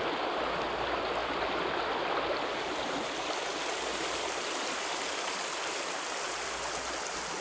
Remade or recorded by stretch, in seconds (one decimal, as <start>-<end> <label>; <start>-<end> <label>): 0.0-1.2 recorded; 1.2-5.1 remade; 5.1-7.4 recorded